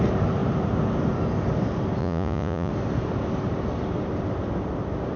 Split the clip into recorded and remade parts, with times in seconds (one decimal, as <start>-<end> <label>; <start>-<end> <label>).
0.0-2.0 recorded; 2.0-2.7 remade; 2.7-5.2 recorded